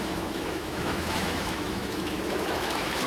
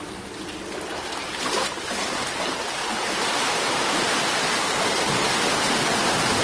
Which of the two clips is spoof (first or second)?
first